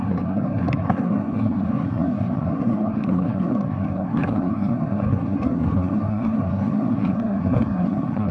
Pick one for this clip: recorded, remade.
remade